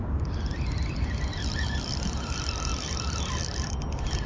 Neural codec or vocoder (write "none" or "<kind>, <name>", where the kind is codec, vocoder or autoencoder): none